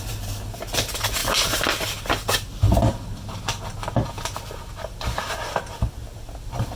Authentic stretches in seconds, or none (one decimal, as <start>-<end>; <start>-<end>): 0.0-6.8